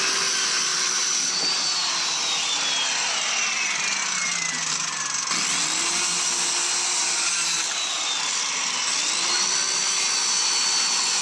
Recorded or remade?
recorded